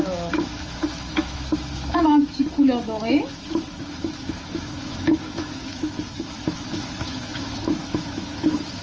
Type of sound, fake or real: fake